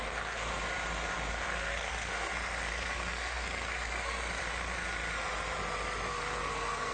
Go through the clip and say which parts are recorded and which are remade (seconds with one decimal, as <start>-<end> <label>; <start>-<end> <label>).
0.0-0.5 remade; 0.5-1.3 recorded; 1.3-4.4 remade; 4.4-6.1 recorded; 6.1-6.9 remade

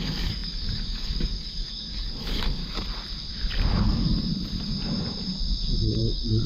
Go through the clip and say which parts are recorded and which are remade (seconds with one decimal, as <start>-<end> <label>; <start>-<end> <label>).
0.0-2.6 remade; 2.6-3.7 recorded; 3.7-4.3 remade; 4.3-6.0 recorded; 6.0-6.5 remade